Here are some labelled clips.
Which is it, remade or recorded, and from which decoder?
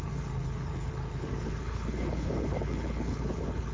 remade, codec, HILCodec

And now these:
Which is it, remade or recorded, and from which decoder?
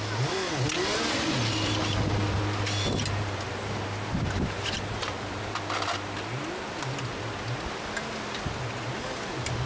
recorded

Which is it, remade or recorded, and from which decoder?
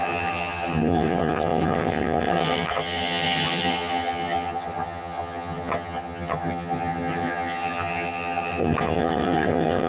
remade, vocoder, HiFi-GAN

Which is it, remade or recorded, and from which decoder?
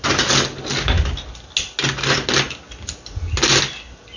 recorded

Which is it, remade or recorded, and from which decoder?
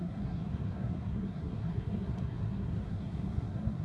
remade, codec, SNAC